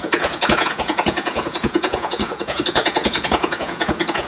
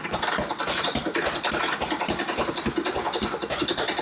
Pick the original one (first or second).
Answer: second